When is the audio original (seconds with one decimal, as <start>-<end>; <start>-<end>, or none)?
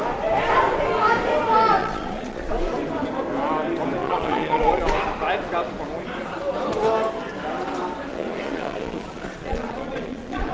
0.0-1.8; 2.5-4.0; 4.8-8.1